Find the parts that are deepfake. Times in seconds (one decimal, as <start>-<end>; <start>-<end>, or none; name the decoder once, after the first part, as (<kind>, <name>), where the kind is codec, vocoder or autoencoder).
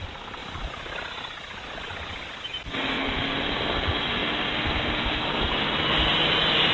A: none